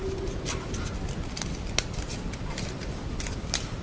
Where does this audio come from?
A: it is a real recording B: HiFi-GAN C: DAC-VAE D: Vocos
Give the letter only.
A